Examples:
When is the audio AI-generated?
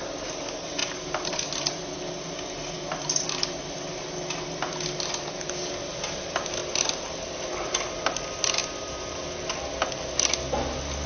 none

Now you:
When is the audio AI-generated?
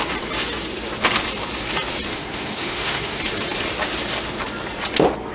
2.1-3.2 (autoencoder, DAC-VAE)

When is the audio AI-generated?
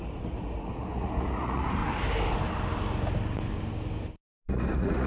0.0-1.8 (vocoder, Vocos); 4.5-5.1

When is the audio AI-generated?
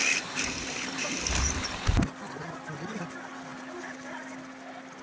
0.0-1.5 (vocoder, BigVGAN v2); 3.5-4.2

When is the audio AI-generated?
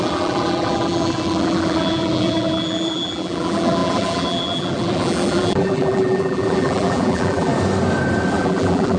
0.0-7.5 (vocoder, BigVGAN v2); 8.3-9.0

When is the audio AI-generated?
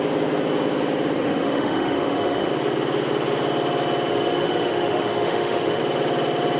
1.2-2.5 (autoencoder, DAC-VAE); 4.1-5.8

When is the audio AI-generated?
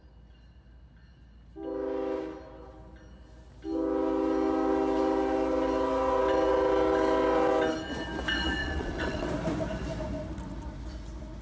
8.6-9.3 (vocoder, WaveNeXt)